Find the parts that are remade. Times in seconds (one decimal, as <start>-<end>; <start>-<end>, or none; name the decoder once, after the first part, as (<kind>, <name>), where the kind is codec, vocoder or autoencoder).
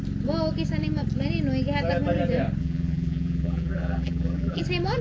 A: 2.6-4.6 (vocoder, BigVGAN v2)